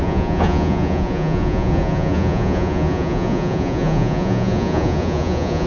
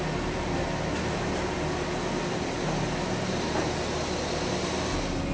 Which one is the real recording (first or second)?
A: second